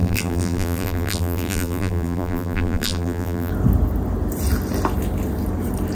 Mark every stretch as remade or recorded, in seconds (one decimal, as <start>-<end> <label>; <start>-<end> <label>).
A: 0.0-3.5 remade; 3.5-5.9 recorded